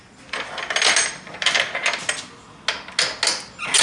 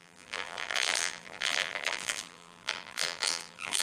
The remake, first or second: second